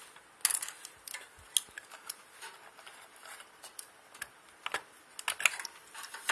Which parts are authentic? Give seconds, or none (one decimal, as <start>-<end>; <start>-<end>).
0.0-6.3